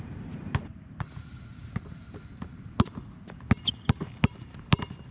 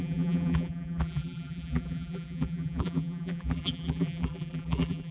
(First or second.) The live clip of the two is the first